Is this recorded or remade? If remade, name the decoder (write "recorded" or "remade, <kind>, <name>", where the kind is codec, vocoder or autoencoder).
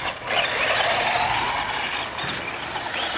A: recorded